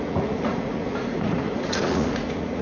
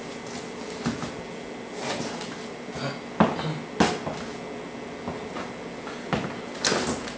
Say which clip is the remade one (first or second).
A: first